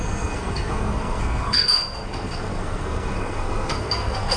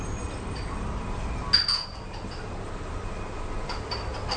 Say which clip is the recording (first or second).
second